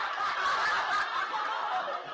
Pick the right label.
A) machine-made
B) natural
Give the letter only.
B